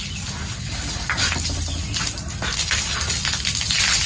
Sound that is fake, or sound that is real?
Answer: real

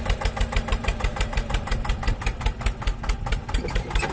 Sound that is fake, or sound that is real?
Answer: fake